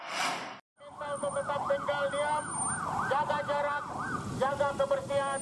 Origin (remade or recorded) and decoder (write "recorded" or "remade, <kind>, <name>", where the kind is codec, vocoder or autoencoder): recorded